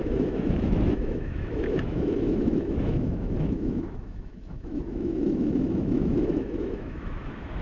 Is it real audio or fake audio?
fake